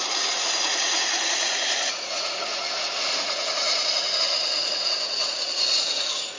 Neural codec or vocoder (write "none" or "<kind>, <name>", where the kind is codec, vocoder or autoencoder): vocoder, Vocos